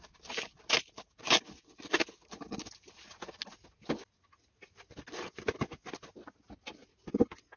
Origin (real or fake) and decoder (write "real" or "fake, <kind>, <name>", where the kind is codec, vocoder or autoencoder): real